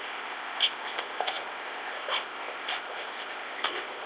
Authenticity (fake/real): fake